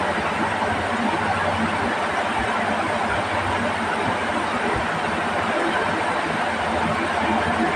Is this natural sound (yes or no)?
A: yes